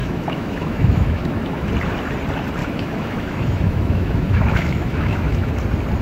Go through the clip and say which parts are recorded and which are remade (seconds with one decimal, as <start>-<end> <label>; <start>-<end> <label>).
0.0-1.7 remade; 1.7-2.6 recorded; 2.6-5.5 remade; 5.5-6.0 recorded